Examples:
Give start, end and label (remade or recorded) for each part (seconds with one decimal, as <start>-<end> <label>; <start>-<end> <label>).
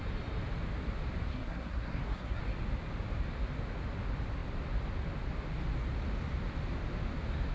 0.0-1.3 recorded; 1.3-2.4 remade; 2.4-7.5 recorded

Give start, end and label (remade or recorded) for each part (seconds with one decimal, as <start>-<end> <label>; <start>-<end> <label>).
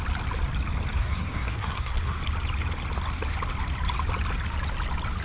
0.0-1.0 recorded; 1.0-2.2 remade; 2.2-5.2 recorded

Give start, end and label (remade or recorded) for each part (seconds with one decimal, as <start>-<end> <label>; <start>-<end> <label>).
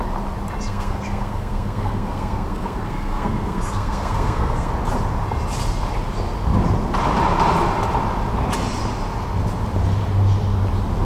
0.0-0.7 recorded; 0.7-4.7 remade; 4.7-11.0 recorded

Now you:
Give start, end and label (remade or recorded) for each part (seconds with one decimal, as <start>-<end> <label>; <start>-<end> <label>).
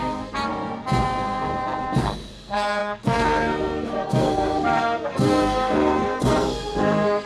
0.0-0.5 remade; 0.5-2.0 recorded; 2.0-7.3 remade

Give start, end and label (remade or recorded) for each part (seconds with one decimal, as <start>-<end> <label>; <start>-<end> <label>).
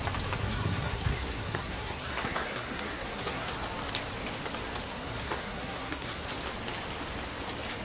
0.0-0.4 recorded; 0.4-3.5 remade; 3.5-4.8 recorded; 4.8-6.3 remade; 6.3-7.8 recorded